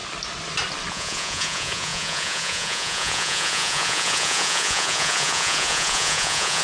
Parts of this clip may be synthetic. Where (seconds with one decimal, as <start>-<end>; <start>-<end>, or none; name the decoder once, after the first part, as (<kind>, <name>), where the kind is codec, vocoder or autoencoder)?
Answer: 0.9-6.6 (vocoder, Vocos)